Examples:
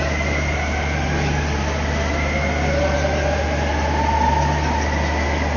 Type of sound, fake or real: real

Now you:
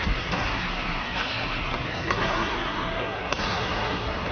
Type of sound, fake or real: fake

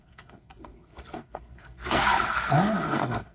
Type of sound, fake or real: fake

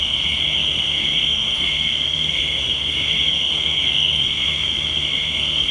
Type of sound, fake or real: fake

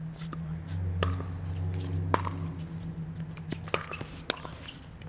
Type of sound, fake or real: real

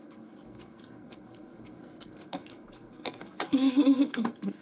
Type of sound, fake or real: fake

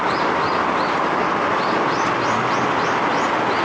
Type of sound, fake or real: real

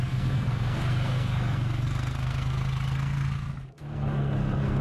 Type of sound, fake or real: fake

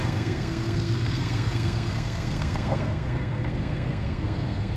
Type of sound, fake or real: fake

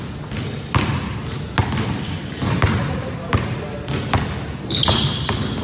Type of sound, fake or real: real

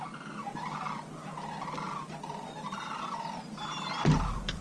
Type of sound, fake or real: real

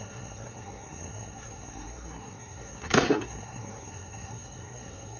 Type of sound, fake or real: fake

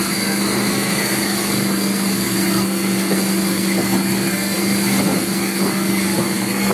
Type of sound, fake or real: fake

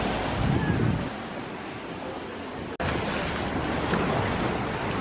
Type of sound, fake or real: real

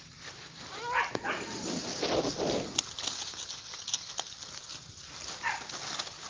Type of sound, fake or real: real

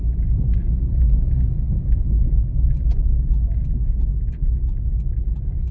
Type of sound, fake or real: real